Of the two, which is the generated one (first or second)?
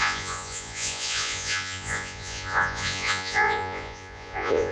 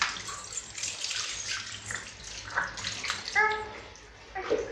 first